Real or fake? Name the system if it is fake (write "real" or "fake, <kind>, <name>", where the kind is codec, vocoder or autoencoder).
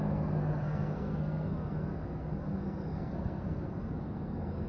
fake, codec, SNAC